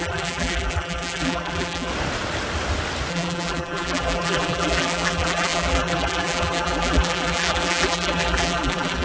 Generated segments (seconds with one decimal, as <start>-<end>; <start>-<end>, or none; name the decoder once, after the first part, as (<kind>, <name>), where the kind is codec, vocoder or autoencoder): 0.0-1.9 (vocoder, BigVGAN v2); 3.1-9.0

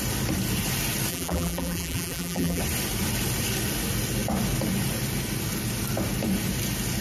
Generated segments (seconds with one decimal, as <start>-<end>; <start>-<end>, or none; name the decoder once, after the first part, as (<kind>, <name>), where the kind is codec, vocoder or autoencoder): 1.1-2.6 (vocoder, BigVGAN v2)

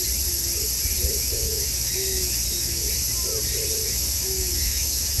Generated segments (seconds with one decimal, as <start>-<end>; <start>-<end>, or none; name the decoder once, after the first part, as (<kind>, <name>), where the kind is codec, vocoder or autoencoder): 1.2-2.9 (autoencoder, DAC-VAE); 3.8-5.2